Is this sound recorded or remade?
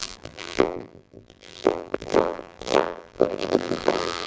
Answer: remade